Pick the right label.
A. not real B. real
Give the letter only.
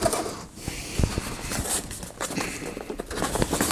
B